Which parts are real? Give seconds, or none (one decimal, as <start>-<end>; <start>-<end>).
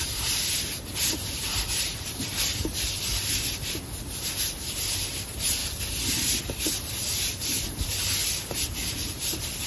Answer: 5.6-6.4